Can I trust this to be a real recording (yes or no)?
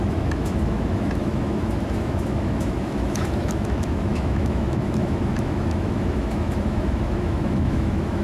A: no